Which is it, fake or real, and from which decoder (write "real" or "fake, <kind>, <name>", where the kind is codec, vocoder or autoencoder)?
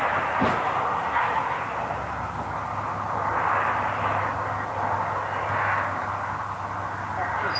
real